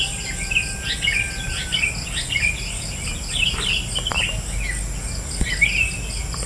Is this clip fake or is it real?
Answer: real